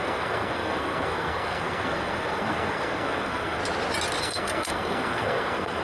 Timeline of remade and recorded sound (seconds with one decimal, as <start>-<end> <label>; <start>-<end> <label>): 0.0-3.6 remade; 3.6-4.2 recorded; 4.2-5.8 remade